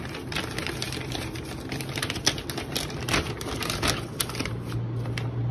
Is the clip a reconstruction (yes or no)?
no